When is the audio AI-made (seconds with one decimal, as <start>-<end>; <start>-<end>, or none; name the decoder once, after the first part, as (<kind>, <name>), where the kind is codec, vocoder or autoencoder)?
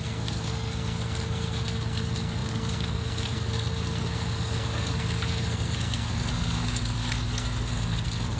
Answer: 0.0-8.4 (codec, SNAC)